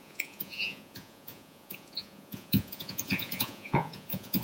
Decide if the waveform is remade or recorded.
remade